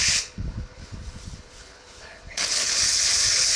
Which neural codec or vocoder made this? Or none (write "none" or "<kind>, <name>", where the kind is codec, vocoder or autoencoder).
codec, HILCodec